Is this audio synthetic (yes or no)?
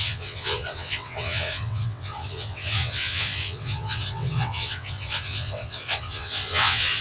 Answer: yes